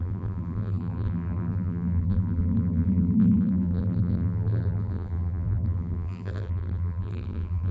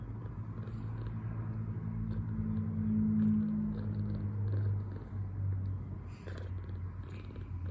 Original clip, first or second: second